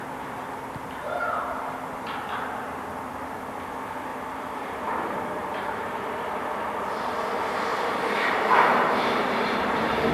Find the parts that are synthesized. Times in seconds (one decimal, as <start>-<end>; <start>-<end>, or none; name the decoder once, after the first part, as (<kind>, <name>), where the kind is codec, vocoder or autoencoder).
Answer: 4.1-6.2 (vocoder, BigVGAN v2); 7.7-10.1